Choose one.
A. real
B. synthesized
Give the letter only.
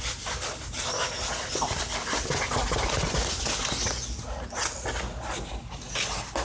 A